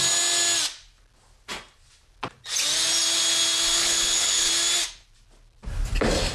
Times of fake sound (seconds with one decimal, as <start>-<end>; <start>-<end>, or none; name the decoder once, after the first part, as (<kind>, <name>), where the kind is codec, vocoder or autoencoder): 3.8-4.5 (codec, HILCodec)